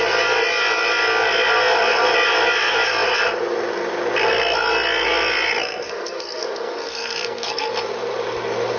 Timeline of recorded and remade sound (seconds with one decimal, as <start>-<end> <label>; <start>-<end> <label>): 0.0-5.5 recorded; 5.5-7.7 remade; 7.7-8.8 recorded